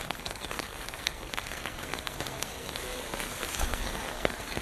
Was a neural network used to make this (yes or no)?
yes